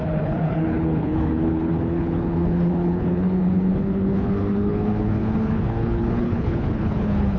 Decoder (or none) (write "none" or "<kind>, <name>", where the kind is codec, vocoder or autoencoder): codec, HILCodec